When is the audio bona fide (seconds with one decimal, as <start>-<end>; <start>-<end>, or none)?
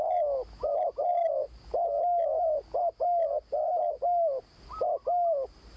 0.0-5.8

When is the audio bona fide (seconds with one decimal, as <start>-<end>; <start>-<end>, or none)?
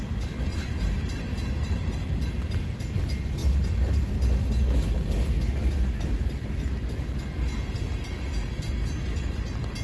0.0-0.5; 1.8-3.4; 4.2-9.8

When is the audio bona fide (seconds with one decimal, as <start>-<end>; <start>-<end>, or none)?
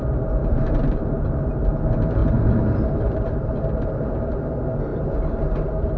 0.0-0.4; 1.7-2.2; 4.1-4.9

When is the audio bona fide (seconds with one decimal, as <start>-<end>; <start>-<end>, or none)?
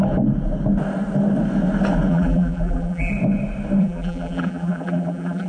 0.0-2.1; 3.1-3.8